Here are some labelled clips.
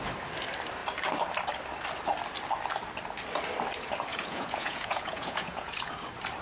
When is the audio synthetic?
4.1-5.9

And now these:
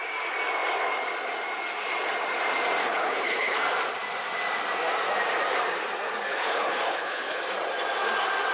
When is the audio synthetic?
2.8-3.6; 6.3-7.4

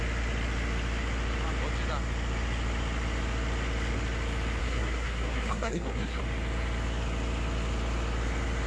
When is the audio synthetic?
4.6-6.2

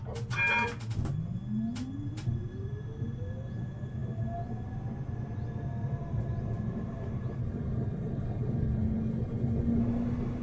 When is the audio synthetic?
7.4-9.8

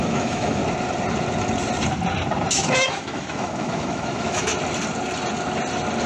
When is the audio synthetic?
0.0-0.6; 2.5-4.5

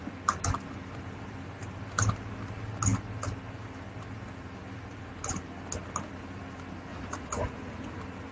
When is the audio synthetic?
6.9-7.8

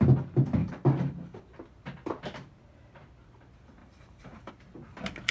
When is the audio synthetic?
0.6-1.4; 3.8-4.5

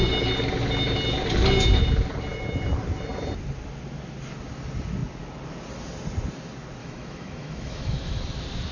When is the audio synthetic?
6.8-8.2